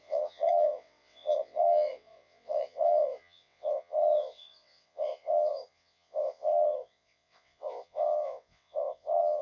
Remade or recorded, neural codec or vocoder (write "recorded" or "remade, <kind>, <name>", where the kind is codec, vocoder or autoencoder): remade, vocoder, WaveNeXt